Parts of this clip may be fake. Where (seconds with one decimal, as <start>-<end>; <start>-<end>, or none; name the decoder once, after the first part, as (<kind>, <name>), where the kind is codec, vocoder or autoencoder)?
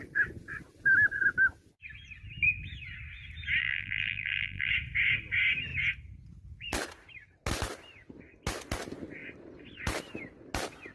3.6-4.7 (vocoder, BigVGAN v2)